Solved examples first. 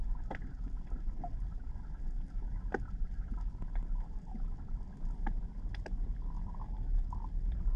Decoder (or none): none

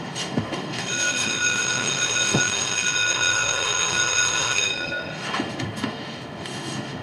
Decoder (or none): autoencoder, DAC-VAE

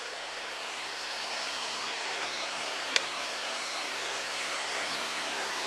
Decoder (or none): codec, SNAC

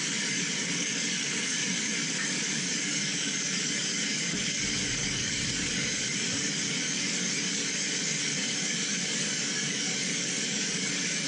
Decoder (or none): codec, DAC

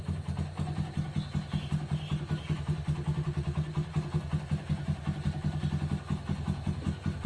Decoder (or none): none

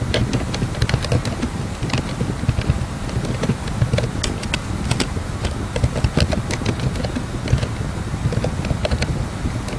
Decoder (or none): none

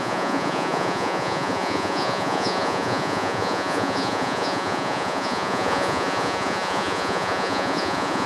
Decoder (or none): vocoder, Vocos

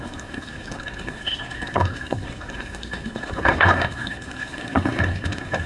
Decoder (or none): codec, SNAC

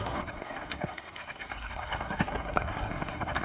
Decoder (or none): codec, SNAC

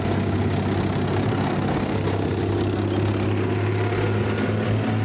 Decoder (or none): none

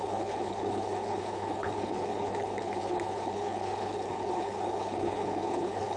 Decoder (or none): codec, HILCodec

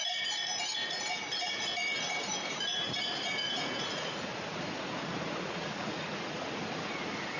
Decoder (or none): vocoder, Vocos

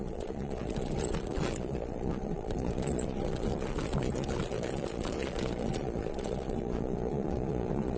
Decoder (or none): vocoder, Vocos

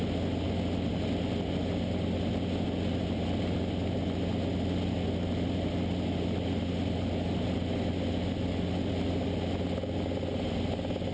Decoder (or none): none